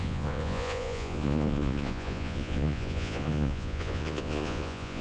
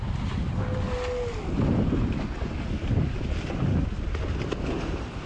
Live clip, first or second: second